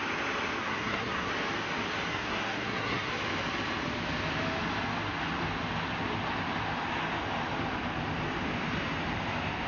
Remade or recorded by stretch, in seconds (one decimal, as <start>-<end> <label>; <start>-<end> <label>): 0.0-0.6 recorded; 0.6-1.3 remade; 1.3-2.1 recorded; 2.1-3.1 remade; 3.1-9.7 recorded